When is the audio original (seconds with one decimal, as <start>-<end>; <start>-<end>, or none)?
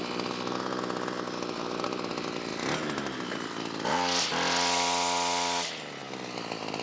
0.0-6.8